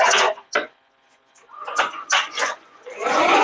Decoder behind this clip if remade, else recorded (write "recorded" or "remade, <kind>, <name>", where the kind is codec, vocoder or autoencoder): remade, vocoder, Vocos